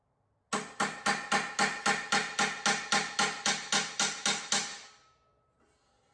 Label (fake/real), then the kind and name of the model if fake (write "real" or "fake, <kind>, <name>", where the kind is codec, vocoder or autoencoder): real